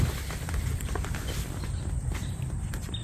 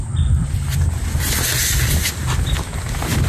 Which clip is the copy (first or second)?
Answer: first